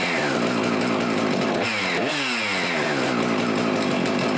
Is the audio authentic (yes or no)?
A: yes